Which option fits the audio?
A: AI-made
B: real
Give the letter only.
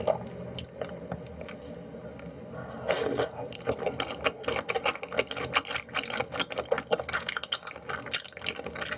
B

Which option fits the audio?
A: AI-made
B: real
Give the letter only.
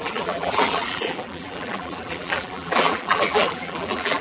A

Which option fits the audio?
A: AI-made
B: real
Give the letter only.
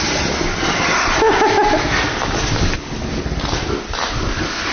B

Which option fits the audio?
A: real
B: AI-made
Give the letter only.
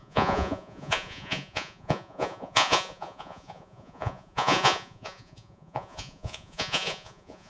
B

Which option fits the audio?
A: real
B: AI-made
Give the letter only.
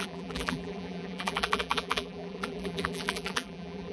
B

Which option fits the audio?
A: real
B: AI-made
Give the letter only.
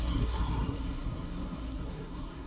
B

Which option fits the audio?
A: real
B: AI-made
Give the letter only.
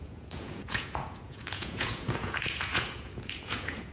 B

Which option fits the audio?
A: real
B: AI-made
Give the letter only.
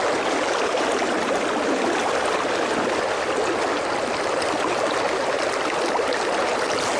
A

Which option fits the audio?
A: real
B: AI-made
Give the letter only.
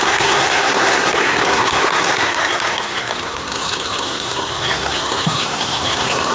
B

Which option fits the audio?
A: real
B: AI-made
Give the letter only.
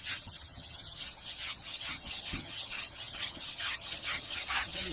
B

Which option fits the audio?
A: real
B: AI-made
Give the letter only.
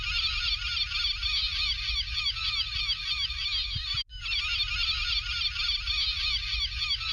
A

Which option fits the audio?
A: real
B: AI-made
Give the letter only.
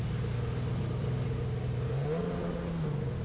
A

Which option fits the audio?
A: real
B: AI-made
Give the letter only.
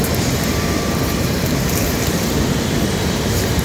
B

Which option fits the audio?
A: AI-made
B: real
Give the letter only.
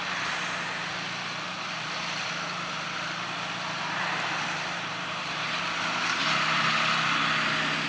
B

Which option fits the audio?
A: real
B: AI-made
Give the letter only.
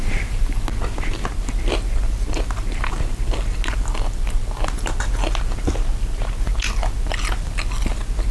A